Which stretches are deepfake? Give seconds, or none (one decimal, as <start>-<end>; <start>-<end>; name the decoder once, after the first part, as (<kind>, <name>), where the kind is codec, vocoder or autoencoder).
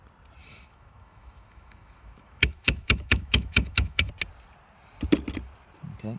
0.4-4.1 (autoencoder, DAC-VAE)